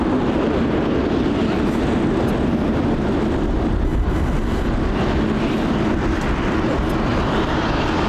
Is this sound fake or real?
real